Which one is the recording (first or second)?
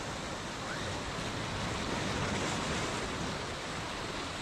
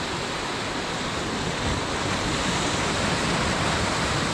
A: first